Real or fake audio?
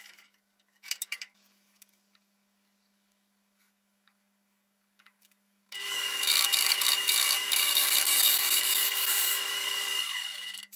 fake